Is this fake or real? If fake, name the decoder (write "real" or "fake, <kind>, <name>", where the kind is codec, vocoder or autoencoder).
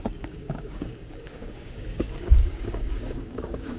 fake, codec, DAC